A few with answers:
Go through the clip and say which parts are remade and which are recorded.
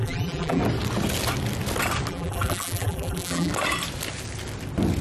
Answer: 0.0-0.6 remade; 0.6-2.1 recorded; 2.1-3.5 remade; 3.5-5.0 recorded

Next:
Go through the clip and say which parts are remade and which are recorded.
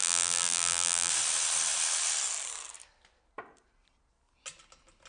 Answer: 0.0-1.1 remade; 1.1-5.1 recorded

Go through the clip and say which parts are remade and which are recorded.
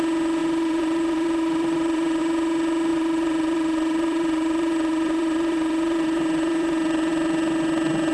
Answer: 0.0-0.4 recorded; 0.4-2.2 remade; 2.2-2.9 recorded; 2.9-7.1 remade; 7.1-8.1 recorded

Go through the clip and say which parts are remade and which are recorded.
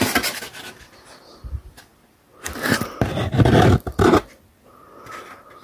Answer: 0.0-5.6 recorded